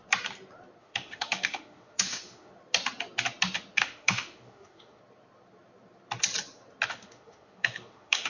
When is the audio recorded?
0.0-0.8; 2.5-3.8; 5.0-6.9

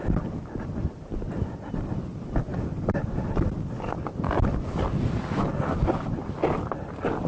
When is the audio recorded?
0.0-7.3

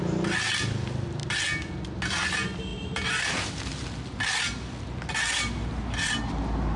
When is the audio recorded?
0.0-6.8

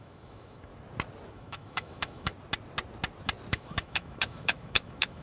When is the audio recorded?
0.7-1.3; 2.3-3.5

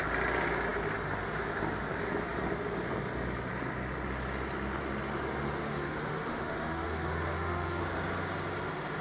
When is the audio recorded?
0.0-5.6; 7.8-9.0

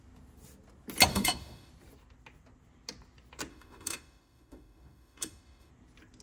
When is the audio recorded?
0.0-1.1; 1.7-3.5; 5.7-6.2